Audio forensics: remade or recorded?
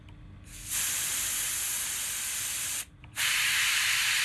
recorded